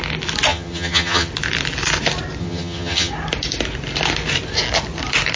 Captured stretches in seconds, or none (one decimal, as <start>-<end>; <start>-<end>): 0.0-0.5; 1.3-2.4; 3.1-5.4